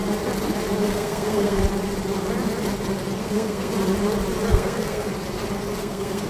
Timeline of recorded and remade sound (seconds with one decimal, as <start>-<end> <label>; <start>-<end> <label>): 0.0-0.8 recorded; 0.8-1.6 remade; 1.6-3.2 recorded; 3.2-3.7 remade; 3.7-4.5 recorded; 4.5-5.1 remade; 5.1-5.8 recorded; 5.8-6.3 remade